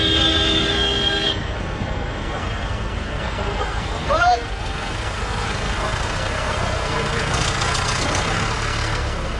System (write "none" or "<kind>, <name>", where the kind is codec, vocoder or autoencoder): codec, SNAC